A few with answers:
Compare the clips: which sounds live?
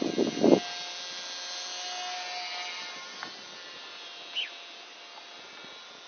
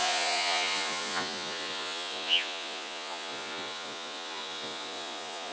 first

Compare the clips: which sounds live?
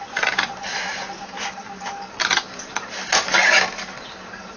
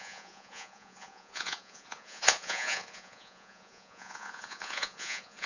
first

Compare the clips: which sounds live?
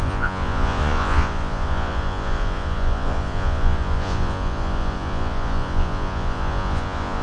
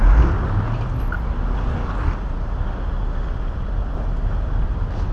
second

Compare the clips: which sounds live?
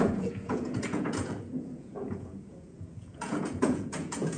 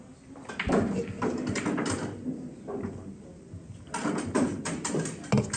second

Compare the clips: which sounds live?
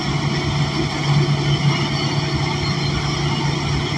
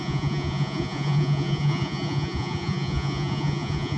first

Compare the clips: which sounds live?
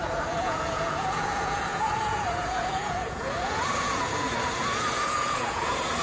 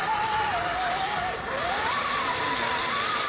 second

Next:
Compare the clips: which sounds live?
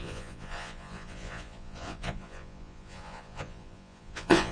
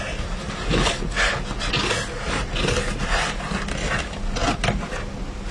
second